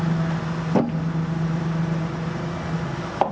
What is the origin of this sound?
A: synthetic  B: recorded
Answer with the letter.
B